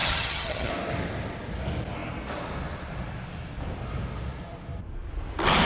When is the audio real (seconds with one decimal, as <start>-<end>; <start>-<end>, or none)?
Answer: 0.7-5.6